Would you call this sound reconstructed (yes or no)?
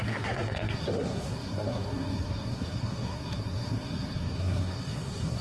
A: yes